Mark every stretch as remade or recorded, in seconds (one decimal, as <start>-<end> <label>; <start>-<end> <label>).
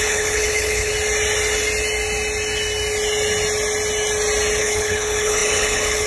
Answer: 0.0-0.9 remade; 0.9-4.6 recorded; 4.6-6.1 remade